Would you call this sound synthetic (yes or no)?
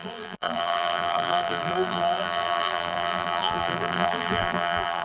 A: yes